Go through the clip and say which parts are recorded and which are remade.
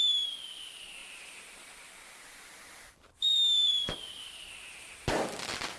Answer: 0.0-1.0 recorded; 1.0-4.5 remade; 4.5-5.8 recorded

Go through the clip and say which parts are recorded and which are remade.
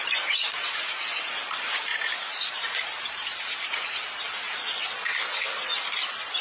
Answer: 0.0-1.9 recorded; 1.9-4.6 remade; 4.6-6.4 recorded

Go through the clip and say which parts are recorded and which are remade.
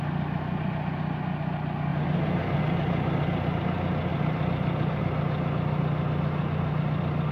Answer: 0.0-1.9 recorded; 1.9-3.6 remade; 3.6-4.1 recorded; 4.1-5.0 remade; 5.0-7.3 recorded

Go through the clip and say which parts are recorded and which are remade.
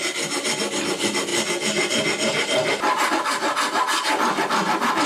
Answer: 0.0-5.1 recorded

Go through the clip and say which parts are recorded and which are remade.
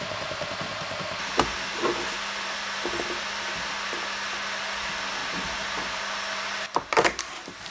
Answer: 0.0-5.2 recorded; 5.2-6.0 remade; 6.0-7.7 recorded